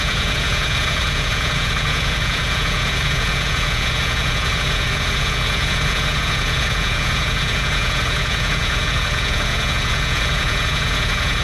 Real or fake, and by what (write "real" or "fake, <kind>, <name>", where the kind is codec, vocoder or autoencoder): fake, vocoder, Vocos